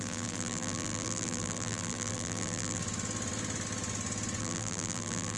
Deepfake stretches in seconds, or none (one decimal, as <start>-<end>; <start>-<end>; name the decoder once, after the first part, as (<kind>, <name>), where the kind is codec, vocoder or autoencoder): 0.0-2.8 (vocoder, BigVGAN v2); 4.4-5.4